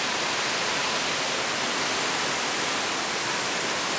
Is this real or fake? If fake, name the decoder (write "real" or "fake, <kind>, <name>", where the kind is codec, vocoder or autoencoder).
real